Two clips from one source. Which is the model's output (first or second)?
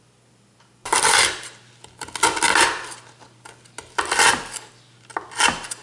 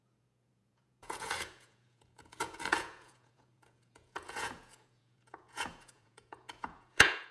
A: second